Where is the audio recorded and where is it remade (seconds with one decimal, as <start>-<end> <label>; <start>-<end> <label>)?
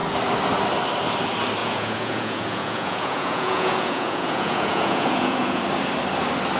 0.0-1.6 recorded; 1.6-5.6 remade; 5.6-6.6 recorded